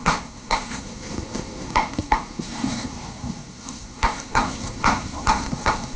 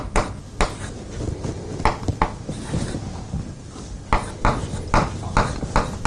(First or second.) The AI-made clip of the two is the first